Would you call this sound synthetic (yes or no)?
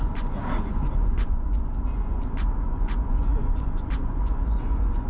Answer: yes